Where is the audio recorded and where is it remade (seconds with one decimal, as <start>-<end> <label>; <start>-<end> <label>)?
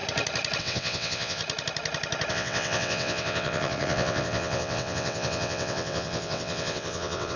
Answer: 0.0-0.6 recorded; 0.6-1.4 remade; 1.4-2.3 recorded; 2.3-7.4 remade